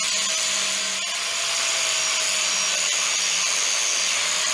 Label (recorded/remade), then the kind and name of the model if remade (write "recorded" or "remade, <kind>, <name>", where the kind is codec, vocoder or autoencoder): recorded